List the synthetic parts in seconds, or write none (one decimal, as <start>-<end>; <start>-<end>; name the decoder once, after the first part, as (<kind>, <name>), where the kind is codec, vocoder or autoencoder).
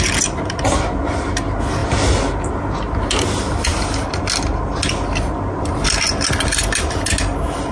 none